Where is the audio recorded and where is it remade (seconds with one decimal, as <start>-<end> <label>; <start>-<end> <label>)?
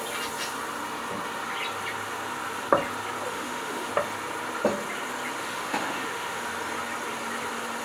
0.0-3.3 recorded; 3.3-3.9 remade; 3.9-5.4 recorded; 5.4-6.4 remade; 6.4-7.8 recorded